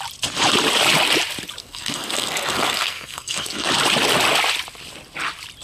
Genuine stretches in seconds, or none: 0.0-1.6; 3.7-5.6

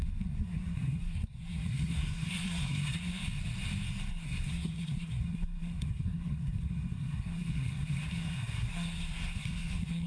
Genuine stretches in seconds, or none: 3.2-4.1